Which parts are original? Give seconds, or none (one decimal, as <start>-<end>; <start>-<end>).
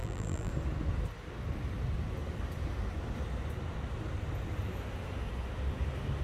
0.5-6.2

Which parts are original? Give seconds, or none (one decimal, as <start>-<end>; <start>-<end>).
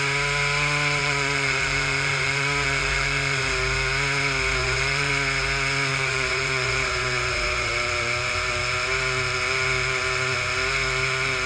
0.0-1.0; 3.4-4.6; 5.1-5.9; 7.7-11.5